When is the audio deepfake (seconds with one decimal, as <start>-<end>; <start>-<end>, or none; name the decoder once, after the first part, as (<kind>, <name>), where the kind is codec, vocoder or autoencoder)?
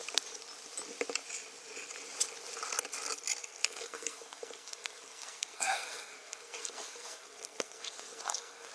3.4-8.7 (codec, SNAC)